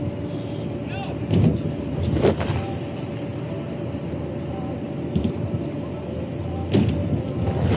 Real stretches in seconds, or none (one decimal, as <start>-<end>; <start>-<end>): 0.0-7.8

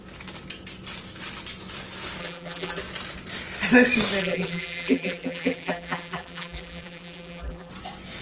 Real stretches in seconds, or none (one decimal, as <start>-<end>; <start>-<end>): 0.0-2.2; 2.8-4.2; 7.7-8.2

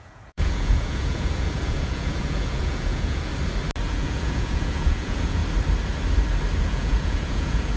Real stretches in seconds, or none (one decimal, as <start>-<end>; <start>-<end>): 3.3-3.9; 5.4-6.6

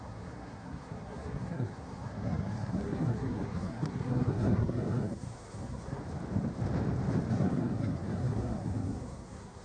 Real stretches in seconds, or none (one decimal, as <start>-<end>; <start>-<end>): 6.0-7.3

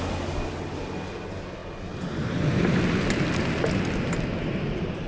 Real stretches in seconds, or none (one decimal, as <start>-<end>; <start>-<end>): 0.0-5.1

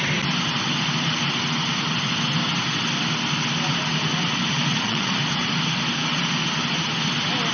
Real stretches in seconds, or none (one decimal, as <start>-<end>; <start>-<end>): 0.0-4.7; 5.2-7.5

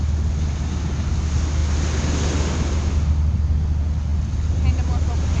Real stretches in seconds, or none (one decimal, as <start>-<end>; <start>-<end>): 0.0-5.4